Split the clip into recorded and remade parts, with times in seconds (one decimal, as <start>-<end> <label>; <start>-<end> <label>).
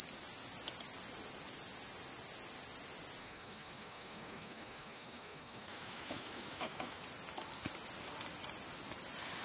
0.0-3.2 recorded; 3.2-7.0 remade; 7.0-9.4 recorded